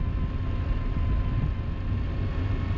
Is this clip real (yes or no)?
yes